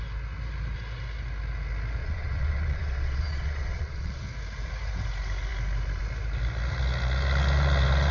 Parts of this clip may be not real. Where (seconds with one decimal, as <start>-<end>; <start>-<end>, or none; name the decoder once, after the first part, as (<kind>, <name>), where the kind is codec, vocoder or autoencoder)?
2.0-4.2 (vocoder, Vocos)